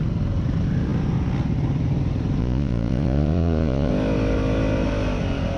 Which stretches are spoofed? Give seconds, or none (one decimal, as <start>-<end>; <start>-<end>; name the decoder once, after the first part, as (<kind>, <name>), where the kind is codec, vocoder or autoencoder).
2.4-3.9 (vocoder, Vocos)